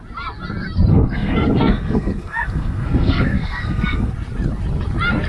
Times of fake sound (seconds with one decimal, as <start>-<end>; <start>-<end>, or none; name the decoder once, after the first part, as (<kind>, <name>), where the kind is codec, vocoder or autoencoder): 0.9-4.1 (codec, SNAC)